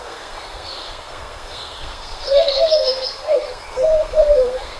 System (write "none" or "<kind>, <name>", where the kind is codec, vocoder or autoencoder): codec, SNAC